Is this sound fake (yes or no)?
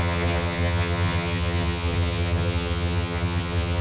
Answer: yes